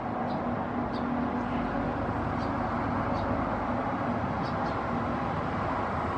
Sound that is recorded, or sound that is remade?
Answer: recorded